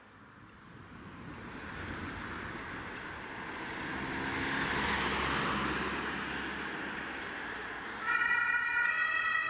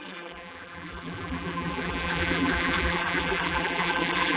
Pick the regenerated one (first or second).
second